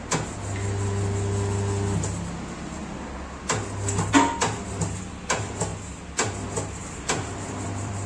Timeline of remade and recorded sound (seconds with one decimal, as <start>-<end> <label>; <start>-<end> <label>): 0.0-6.8 recorded; 6.8-8.1 remade